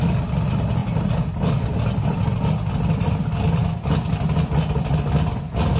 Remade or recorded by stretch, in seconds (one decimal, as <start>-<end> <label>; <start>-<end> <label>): 0.0-5.8 recorded

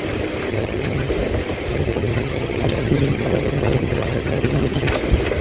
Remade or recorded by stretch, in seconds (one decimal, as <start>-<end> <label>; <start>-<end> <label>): 0.0-0.5 recorded; 0.5-1.1 remade; 1.1-1.7 recorded; 1.7-4.9 remade; 4.9-5.4 recorded